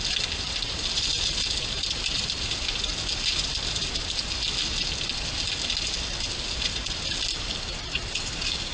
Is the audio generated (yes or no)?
no